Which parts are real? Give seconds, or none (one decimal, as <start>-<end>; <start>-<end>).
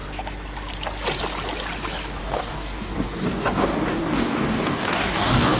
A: 0.0-2.2